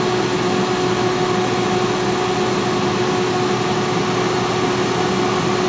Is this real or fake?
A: real